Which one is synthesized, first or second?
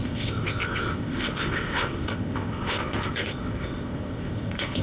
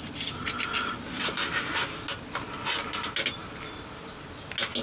first